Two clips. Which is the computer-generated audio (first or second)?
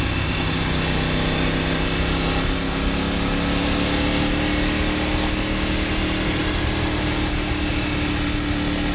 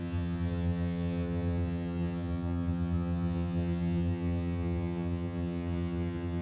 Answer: second